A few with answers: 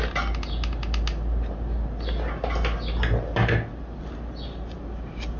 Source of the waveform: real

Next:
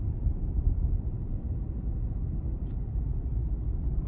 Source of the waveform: fake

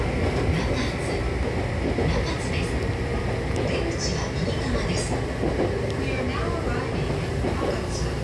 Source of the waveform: real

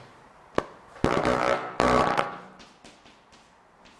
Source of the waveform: fake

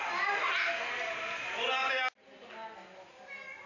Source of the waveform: real